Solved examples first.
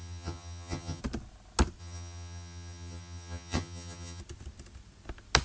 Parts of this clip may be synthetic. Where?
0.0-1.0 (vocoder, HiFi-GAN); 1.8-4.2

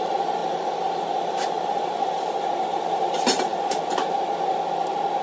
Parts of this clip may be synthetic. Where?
none